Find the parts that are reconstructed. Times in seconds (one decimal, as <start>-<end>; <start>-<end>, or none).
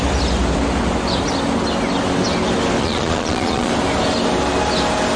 2.8-3.7